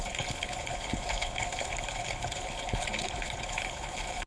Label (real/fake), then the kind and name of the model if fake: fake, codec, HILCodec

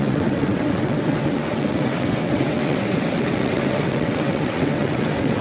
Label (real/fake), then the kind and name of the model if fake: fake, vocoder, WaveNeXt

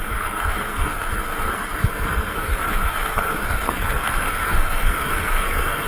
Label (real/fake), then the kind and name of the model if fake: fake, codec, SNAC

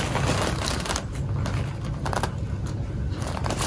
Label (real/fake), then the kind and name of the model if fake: real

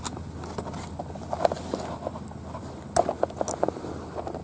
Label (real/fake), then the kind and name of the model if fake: real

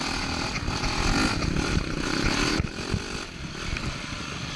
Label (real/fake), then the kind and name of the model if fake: real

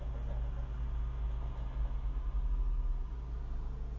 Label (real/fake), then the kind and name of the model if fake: real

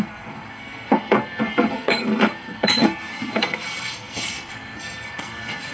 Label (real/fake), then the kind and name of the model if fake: fake, codec, SNAC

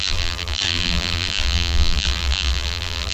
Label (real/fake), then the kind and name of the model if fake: fake, vocoder, BigVGAN v2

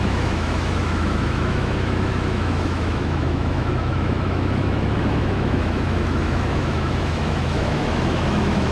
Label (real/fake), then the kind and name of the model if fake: fake, autoencoder, DAC-VAE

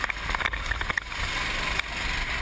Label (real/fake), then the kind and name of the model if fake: real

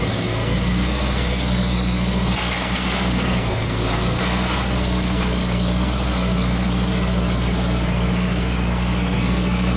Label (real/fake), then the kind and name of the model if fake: fake, codec, SNAC